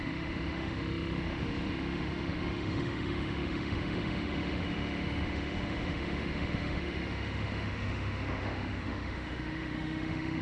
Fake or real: fake